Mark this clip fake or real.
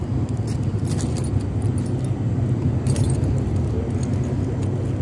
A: real